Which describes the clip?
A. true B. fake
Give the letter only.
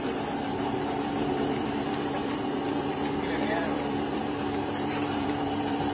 B